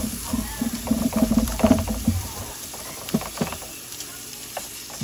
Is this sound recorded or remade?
remade